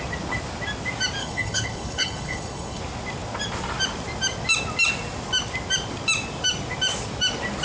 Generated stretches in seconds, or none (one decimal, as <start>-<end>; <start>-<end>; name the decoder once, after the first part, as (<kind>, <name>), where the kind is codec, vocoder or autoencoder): 1.2-2.8 (codec, HILCodec)

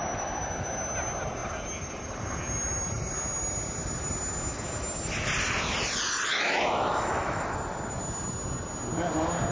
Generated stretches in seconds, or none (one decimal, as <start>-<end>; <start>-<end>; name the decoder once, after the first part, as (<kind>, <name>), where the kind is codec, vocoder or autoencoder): 6.3-7.4 (autoencoder, DAC-VAE)

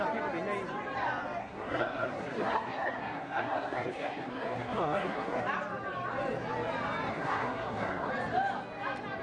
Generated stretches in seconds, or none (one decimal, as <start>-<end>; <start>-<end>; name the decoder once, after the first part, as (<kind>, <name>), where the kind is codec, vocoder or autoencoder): 1.4-5.4 (codec, SNAC); 7.1-8.1

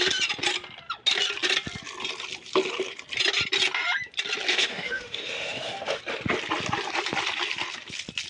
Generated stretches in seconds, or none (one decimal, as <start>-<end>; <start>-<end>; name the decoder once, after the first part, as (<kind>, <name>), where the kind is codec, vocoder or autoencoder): 4.5-6.0 (autoencoder, DAC-VAE)